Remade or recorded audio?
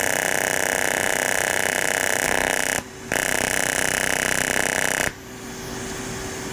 recorded